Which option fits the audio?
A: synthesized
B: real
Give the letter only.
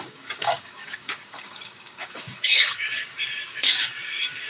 A